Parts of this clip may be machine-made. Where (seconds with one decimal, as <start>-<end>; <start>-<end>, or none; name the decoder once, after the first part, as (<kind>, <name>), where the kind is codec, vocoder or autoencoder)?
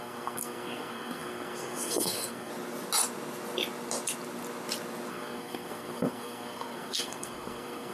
0.0-2.5 (codec, SNAC); 5.1-7.9